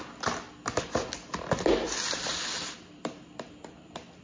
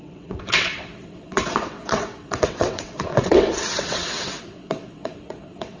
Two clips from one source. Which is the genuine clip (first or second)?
first